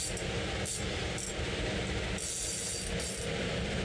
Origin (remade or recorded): recorded